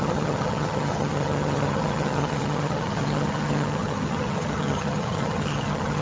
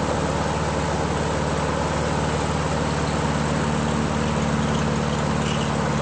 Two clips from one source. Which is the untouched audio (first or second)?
second